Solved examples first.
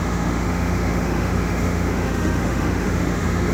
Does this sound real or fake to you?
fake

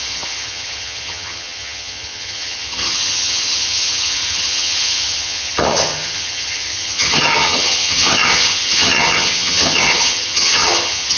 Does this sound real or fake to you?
fake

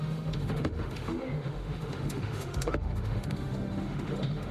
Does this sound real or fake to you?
fake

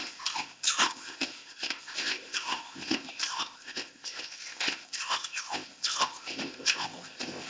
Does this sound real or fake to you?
fake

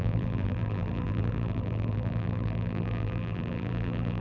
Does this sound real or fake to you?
fake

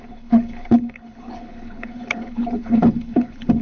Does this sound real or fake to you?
fake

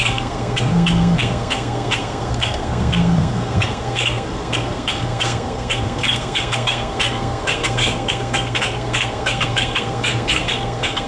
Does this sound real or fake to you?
fake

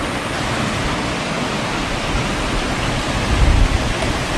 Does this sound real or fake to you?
real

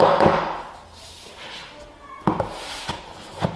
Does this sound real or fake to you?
real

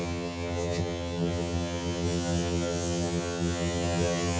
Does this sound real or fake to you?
fake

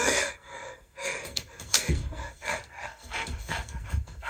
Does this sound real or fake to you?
fake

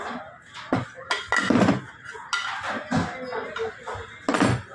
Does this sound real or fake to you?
real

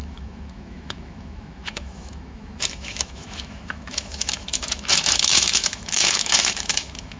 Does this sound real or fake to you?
fake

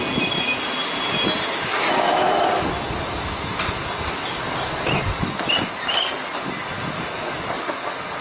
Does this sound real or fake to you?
real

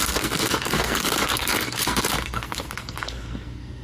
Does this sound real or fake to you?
fake